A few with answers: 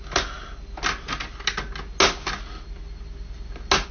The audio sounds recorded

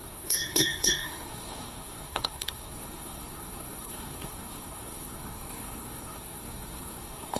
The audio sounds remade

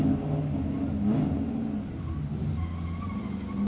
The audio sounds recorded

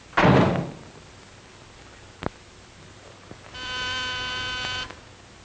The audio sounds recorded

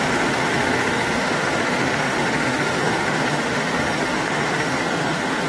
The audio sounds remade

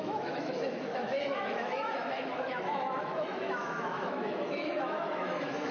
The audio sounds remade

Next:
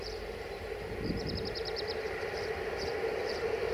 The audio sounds remade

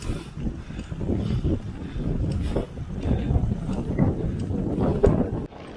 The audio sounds recorded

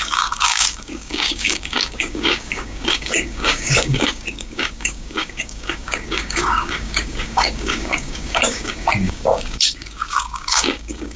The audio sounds remade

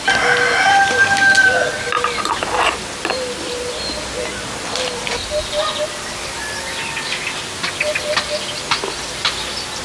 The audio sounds recorded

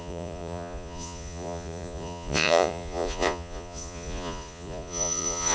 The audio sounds remade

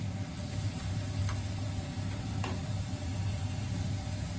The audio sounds recorded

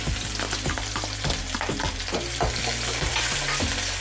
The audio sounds recorded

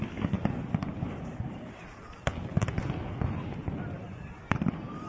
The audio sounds recorded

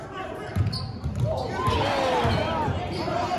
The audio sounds recorded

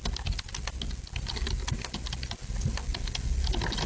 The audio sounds recorded